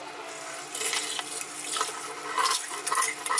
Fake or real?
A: real